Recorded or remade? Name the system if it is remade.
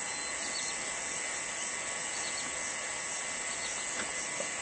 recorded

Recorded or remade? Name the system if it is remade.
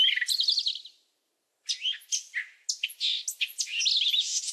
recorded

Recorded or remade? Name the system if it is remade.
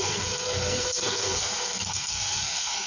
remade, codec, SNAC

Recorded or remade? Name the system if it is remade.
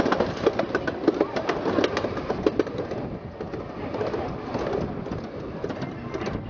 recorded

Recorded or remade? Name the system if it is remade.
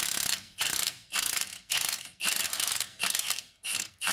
remade, codec, SNAC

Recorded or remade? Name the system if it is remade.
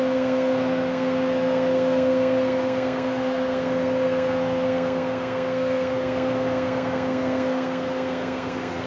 remade, codec, SNAC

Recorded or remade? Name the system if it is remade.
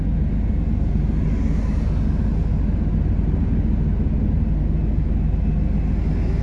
recorded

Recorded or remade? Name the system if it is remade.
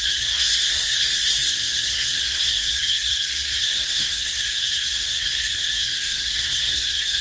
remade, codec, SNAC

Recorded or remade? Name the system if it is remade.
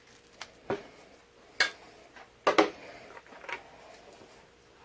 recorded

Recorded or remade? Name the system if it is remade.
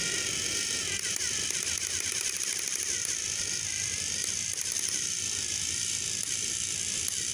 recorded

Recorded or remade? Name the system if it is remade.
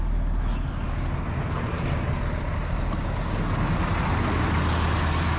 recorded